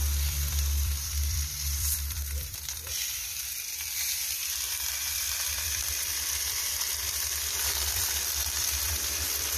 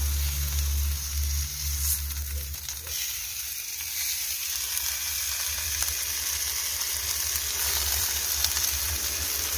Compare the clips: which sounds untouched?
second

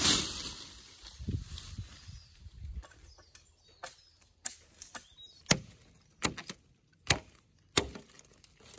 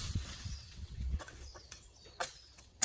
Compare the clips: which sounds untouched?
first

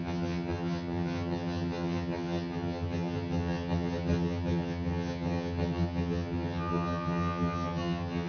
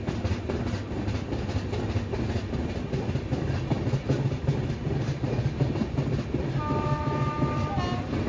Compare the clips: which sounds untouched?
second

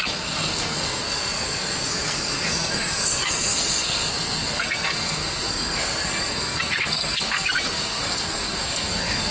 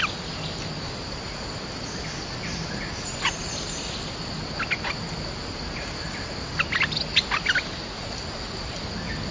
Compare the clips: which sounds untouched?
second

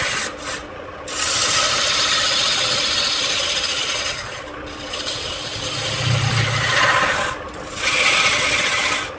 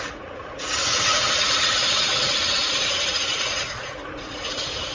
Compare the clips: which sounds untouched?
first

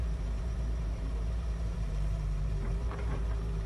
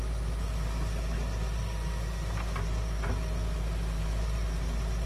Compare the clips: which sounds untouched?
second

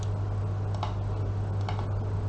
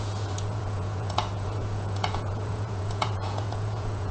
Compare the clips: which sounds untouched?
first